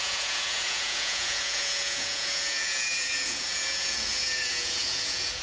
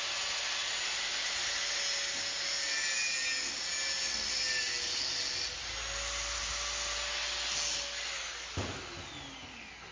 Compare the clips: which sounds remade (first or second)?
first